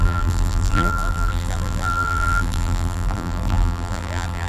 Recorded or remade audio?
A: remade